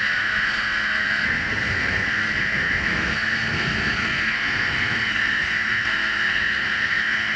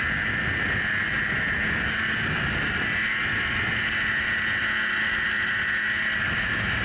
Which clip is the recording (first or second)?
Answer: second